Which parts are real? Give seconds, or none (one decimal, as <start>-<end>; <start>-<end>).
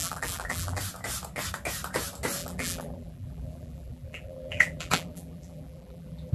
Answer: 0.8-2.4